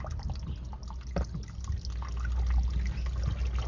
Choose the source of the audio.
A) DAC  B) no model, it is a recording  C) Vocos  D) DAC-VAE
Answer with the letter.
B